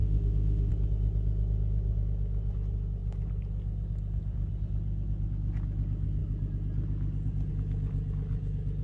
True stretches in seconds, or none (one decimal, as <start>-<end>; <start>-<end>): 0.7-8.8